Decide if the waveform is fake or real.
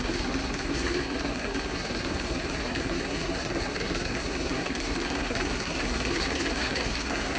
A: fake